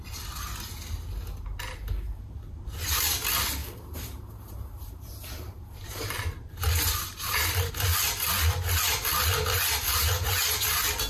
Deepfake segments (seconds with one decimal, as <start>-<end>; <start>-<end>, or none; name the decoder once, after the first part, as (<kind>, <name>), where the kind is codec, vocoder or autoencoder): 3.6-7.7 (vocoder, BigVGAN v2)